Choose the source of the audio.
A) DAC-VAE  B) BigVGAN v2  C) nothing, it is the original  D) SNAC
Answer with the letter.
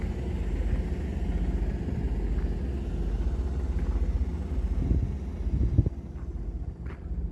C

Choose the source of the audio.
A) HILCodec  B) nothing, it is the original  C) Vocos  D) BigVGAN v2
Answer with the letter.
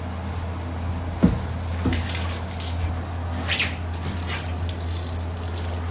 B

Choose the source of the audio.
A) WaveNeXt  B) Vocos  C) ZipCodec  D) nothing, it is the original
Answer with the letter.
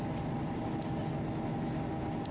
D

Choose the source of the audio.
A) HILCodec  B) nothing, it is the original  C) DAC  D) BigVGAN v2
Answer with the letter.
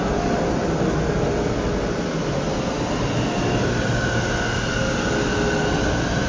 B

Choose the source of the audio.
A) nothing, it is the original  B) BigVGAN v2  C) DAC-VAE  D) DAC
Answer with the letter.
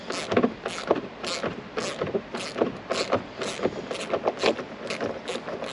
A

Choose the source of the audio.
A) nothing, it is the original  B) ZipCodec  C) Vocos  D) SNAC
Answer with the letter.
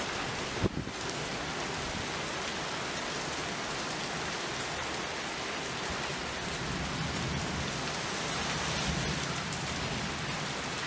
A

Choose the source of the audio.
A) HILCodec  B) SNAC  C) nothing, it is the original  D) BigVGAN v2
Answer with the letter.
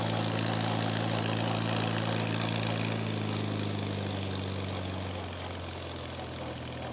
C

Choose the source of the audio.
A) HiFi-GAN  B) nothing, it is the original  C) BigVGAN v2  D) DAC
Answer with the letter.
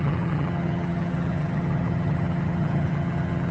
A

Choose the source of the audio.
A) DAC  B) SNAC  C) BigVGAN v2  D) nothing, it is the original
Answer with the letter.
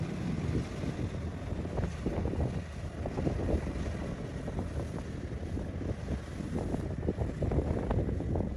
D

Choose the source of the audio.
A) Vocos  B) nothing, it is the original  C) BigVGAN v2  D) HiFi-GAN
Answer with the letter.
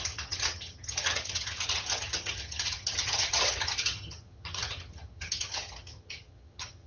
D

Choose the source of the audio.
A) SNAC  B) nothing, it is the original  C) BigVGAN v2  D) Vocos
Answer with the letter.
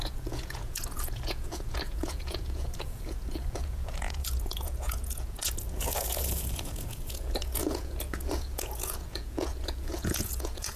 D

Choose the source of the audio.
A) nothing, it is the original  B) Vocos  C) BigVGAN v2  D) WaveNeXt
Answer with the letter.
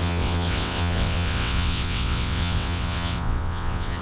D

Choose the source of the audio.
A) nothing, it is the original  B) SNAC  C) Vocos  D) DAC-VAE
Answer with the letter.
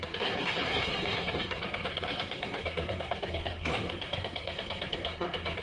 B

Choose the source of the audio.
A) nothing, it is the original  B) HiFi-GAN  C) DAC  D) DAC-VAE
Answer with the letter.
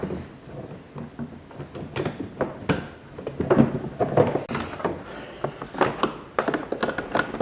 A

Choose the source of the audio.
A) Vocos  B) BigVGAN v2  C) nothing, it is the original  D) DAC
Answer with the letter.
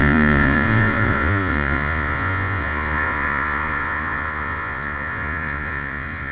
A